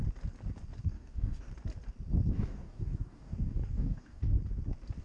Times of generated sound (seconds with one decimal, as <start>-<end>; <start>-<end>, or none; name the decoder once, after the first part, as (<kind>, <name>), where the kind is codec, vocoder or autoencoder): 0.8-1.5 (codec, DAC); 2.3-4.3